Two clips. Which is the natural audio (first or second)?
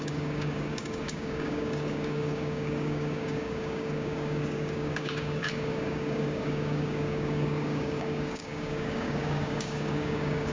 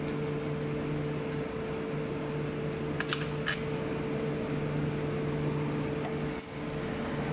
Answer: second